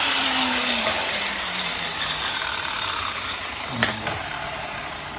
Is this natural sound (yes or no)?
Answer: no